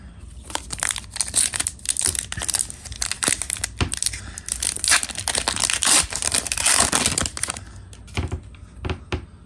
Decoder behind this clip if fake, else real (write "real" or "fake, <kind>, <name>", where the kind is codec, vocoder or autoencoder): real